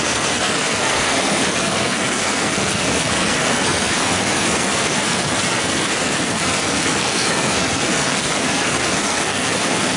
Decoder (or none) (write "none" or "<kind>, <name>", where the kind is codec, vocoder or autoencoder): codec, SNAC